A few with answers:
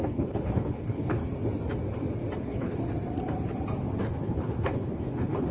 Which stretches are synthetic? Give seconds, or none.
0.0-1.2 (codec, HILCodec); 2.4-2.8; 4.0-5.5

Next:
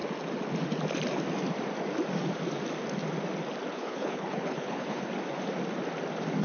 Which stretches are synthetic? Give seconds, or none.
3.7-5.1 (codec, HILCodec)

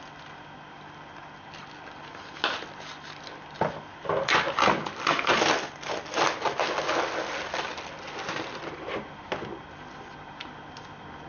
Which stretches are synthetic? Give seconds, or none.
none

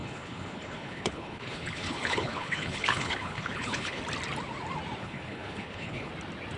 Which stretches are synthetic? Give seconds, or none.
0.0-4.0 (codec, HILCodec); 5.0-6.1

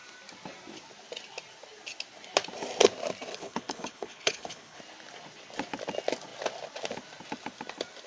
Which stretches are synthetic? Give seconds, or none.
3.3-4.8 (codec, HILCodec)